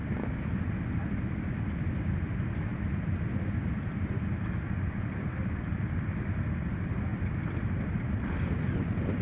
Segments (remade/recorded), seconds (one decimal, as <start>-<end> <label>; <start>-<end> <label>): 0.0-9.2 recorded